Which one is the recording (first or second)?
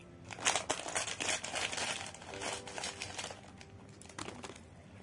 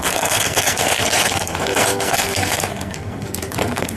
first